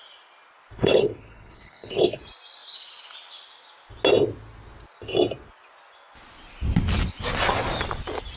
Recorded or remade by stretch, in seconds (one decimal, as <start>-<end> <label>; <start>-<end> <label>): 0.0-0.8 recorded; 0.8-2.2 remade; 2.2-8.4 recorded